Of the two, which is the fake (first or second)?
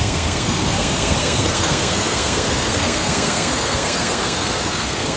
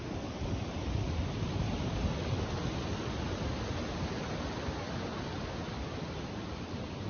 first